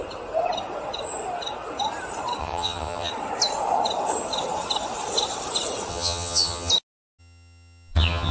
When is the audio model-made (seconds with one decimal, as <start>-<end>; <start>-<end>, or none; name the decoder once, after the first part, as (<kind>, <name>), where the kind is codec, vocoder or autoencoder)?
2.4-3.1 (vocoder, HiFi-GAN); 5.9-6.7; 7.2-8.3